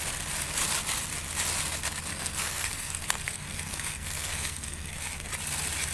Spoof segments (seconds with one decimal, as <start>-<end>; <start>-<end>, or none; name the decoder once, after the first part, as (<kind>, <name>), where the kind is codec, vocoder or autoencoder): 2.1-5.3 (codec, SNAC)